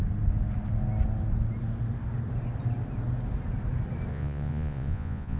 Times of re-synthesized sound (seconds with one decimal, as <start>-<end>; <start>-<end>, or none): 4.1-5.4